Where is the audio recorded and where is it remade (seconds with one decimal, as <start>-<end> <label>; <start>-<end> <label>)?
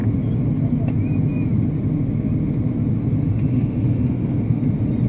0.0-3.5 recorded; 3.5-4.6 remade; 4.6-5.1 recorded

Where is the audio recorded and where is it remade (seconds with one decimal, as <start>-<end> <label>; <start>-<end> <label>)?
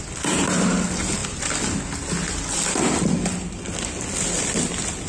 0.0-5.1 recorded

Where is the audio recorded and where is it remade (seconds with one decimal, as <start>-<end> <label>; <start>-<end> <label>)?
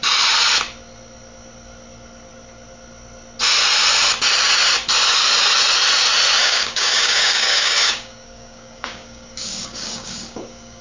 0.0-6.4 recorded; 6.4-10.8 remade